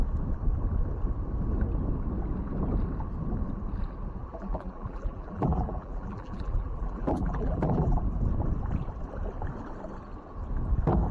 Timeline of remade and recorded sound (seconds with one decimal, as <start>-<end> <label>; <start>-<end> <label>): 0.0-4.3 recorded; 4.3-8.0 remade; 8.0-11.1 recorded